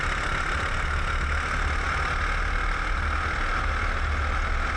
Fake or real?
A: real